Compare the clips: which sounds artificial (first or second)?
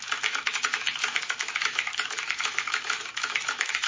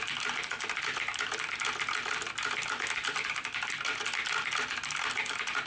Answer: first